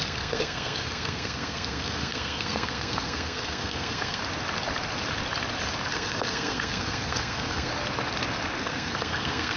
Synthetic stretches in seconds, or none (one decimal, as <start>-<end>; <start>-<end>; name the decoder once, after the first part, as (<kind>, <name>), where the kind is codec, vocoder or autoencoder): 0.0-4.2 (codec, SNAC); 5.9-7.7; 8.6-9.6